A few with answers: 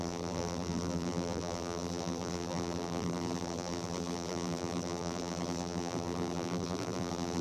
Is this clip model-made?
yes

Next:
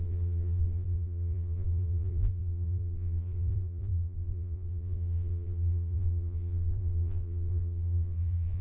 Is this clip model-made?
yes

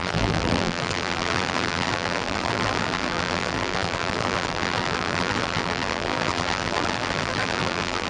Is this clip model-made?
yes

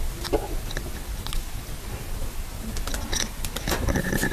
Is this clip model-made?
no